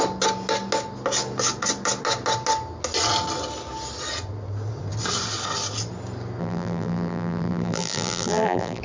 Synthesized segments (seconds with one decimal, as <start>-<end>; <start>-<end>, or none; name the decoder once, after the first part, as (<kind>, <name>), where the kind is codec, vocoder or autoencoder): 6.4-8.8 (vocoder, BigVGAN v2)